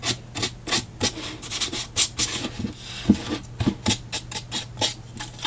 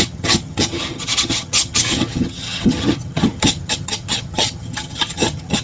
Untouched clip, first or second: first